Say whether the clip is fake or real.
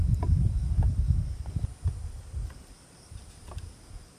real